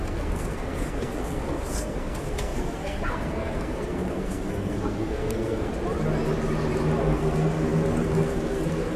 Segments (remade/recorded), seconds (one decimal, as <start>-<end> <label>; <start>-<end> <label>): 0.0-5.7 remade; 5.7-7.0 recorded; 7.0-9.0 remade